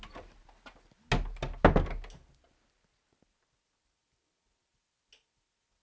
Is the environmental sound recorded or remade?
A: recorded